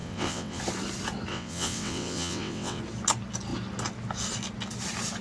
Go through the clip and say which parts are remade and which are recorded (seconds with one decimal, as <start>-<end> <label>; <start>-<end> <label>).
0.0-0.6 remade; 0.6-1.3 recorded; 1.3-2.8 remade; 2.8-5.2 recorded